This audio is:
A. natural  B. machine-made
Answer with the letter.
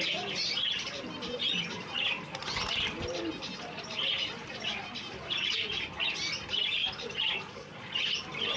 A